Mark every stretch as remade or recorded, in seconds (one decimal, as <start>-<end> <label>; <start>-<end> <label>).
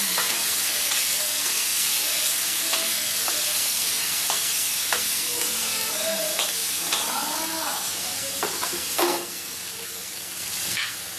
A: 0.0-11.2 remade